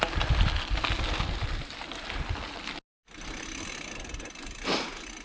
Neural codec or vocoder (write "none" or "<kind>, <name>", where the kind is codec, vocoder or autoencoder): none